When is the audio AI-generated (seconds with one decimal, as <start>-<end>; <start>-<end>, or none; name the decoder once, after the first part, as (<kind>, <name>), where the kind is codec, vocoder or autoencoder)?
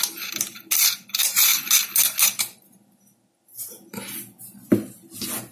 none